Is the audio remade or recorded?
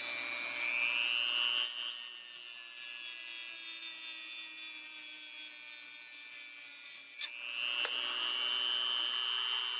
recorded